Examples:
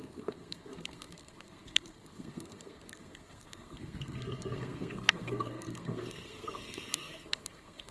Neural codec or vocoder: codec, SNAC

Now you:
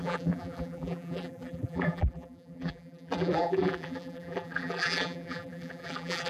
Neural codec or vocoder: vocoder, BigVGAN v2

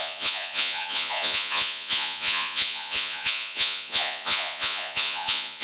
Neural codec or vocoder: vocoder, Vocos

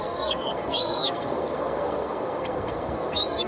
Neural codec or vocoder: codec, SNAC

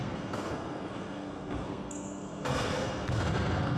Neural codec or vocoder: codec, SNAC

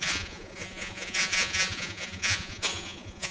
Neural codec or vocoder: vocoder, Vocos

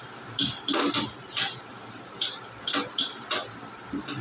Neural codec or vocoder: none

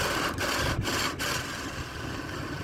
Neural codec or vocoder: none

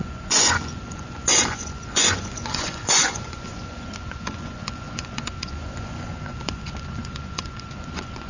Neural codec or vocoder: vocoder, Vocos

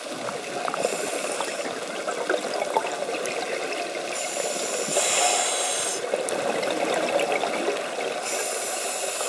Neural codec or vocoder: none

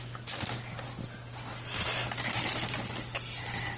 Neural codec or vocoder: vocoder, BigVGAN v2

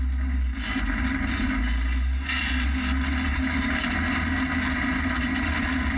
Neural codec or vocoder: none